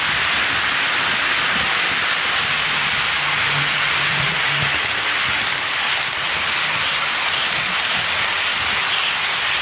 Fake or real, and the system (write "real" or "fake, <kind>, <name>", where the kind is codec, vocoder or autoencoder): real